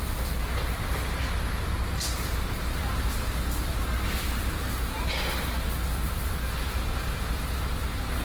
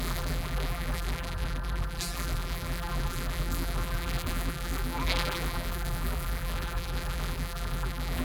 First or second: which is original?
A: first